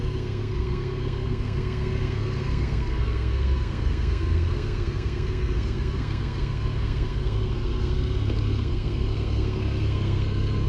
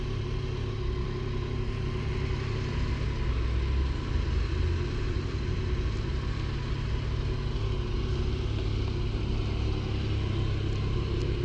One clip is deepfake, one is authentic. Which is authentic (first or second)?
second